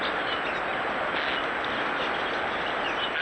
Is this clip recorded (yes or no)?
yes